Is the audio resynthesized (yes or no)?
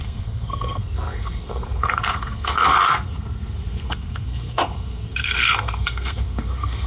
yes